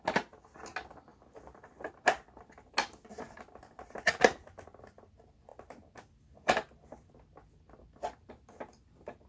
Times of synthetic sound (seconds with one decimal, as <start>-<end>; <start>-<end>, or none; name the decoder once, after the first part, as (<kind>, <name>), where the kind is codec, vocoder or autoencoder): none